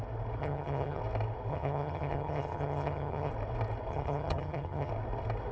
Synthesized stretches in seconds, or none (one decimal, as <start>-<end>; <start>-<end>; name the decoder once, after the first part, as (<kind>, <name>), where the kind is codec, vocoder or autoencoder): 0.4-1.0 (vocoder, HiFi-GAN); 1.5-3.3; 3.9-4.9